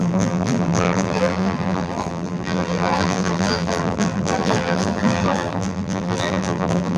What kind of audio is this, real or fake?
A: fake